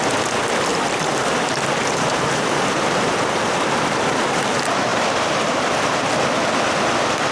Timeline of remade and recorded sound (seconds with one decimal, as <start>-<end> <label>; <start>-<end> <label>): 0.0-0.7 recorded; 0.7-2.6 remade; 2.6-7.3 recorded

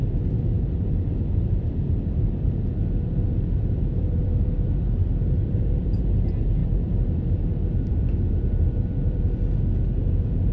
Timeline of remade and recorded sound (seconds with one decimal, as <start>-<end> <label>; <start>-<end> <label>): 0.0-9.4 remade; 9.4-10.0 recorded; 10.0-10.5 remade

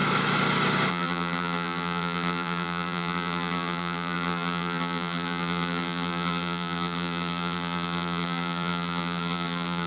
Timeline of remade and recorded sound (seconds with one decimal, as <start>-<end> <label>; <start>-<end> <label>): 0.0-0.9 recorded; 0.9-9.9 remade

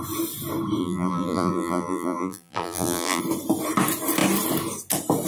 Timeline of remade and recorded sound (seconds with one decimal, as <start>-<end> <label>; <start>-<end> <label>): 0.0-0.8 recorded; 0.8-3.2 remade; 3.2-5.3 recorded

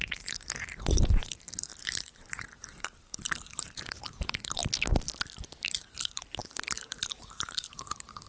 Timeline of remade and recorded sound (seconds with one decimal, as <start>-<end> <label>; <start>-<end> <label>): 0.0-4.6 remade; 4.6-5.7 recorded; 5.7-8.3 remade

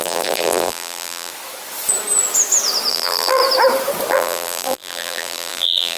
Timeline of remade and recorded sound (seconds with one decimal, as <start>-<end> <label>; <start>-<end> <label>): 0.0-1.3 remade; 1.3-2.9 recorded; 2.9-3.4 remade; 3.4-4.1 recorded; 4.1-6.0 remade

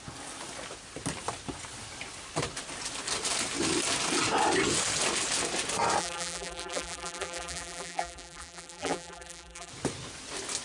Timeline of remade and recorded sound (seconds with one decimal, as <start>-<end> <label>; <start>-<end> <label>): 0.0-6.0 recorded; 6.0-9.7 remade; 9.7-10.6 recorded

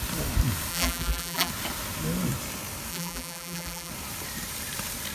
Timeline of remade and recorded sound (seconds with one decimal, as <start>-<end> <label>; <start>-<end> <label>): 0.0-0.7 recorded; 0.7-1.5 remade; 1.5-2.9 recorded; 2.9-3.9 remade; 3.9-5.1 recorded